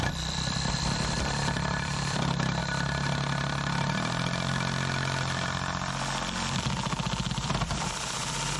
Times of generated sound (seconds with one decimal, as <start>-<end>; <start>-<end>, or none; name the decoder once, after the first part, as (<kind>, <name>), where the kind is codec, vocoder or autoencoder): 0.0-2.6 (vocoder, BigVGAN v2); 7.3-8.6